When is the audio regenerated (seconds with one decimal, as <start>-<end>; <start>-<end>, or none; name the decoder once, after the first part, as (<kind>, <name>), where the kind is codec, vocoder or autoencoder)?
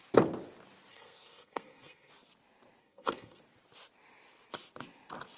0.9-2.1 (codec, SNAC); 2.8-3.4